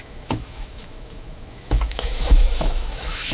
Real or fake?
fake